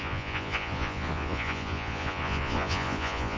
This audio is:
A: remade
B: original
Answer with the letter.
A